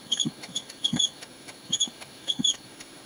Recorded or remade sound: remade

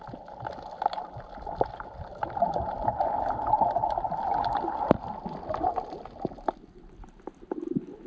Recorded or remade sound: recorded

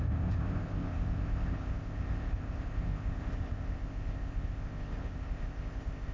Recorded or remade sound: remade